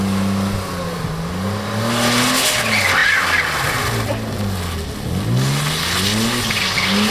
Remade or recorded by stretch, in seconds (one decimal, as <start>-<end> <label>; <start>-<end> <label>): 0.0-7.1 recorded